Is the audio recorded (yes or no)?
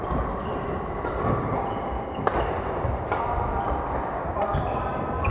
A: yes